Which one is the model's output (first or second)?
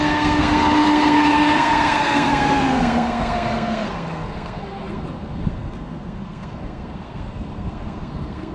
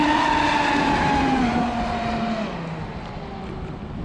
first